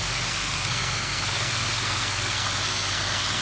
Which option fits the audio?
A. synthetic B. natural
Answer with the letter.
A